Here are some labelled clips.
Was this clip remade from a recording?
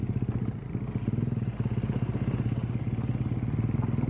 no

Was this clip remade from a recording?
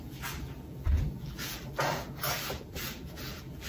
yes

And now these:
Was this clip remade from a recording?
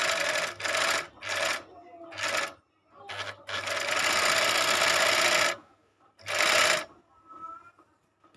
no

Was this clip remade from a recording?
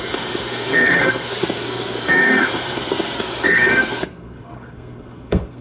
yes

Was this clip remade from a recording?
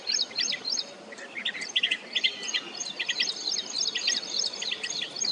no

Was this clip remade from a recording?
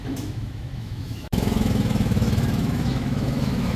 yes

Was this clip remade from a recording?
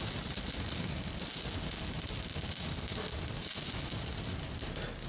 no